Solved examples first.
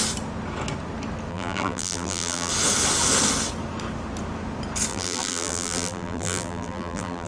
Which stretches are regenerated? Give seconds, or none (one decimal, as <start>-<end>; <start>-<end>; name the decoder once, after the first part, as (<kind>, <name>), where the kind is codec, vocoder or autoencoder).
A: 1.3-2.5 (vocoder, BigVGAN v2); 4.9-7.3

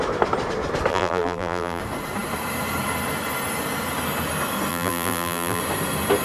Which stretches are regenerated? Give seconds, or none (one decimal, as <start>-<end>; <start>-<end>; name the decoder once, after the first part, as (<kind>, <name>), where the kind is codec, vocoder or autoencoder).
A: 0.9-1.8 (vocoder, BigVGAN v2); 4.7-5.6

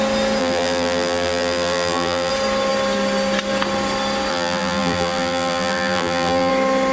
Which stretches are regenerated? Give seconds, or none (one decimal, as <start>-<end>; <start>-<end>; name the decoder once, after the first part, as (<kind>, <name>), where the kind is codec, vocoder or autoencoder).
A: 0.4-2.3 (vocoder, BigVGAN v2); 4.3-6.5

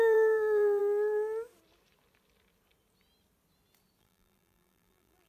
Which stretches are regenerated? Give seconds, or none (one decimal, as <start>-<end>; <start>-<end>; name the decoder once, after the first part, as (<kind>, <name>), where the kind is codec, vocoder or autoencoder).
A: 0.0-0.8 (vocoder, BigVGAN v2); 4.0-5.3

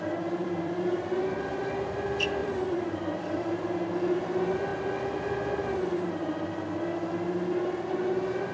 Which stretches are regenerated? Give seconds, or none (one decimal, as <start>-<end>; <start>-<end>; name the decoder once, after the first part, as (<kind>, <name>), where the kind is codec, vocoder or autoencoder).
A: 0.4-1.6 (vocoder, BigVGAN v2); 2.4-3.6

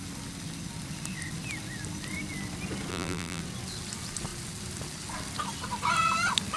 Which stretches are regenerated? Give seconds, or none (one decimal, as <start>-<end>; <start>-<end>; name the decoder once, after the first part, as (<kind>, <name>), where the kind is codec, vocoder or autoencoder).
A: 2.9-3.4 (vocoder, BigVGAN v2)

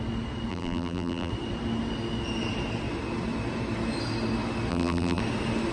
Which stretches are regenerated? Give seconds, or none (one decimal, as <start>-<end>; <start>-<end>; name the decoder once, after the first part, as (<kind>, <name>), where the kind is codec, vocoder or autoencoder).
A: 0.5-1.3 (vocoder, BigVGAN v2); 4.7-5.2

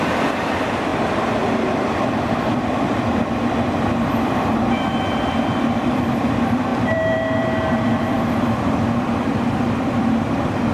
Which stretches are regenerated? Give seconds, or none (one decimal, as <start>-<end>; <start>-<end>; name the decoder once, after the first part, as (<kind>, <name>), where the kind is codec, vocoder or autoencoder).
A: 0.0-10.7 (vocoder, BigVGAN v2)